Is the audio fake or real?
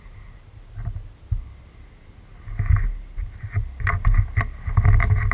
real